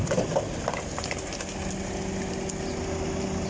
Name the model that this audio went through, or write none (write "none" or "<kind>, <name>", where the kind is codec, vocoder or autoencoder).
none